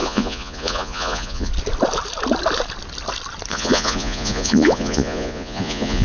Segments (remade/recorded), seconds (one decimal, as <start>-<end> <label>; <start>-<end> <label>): 0.0-1.5 remade; 1.5-3.5 recorded; 3.5-6.0 remade